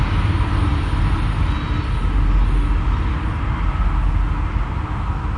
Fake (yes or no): no